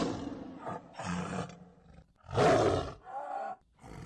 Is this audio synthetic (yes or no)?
no